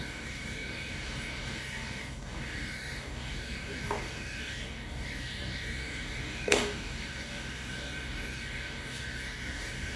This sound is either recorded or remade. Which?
remade